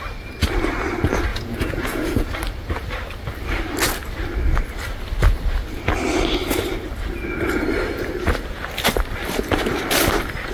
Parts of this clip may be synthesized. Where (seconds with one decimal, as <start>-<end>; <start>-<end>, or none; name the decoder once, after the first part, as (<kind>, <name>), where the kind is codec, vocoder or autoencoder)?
1.3-2.3 (vocoder, Vocos)